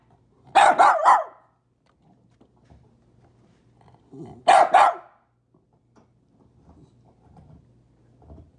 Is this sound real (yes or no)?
yes